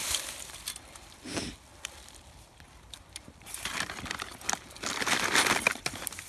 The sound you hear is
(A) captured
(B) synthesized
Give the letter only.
B